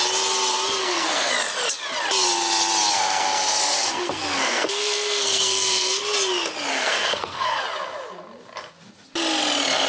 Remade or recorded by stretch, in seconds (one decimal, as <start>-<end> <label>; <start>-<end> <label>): 0.0-0.8 recorded; 0.8-1.3 remade; 1.3-2.9 recorded; 2.9-6.0 remade; 6.0-6.7 recorded; 6.7-7.6 remade; 7.6-9.9 recorded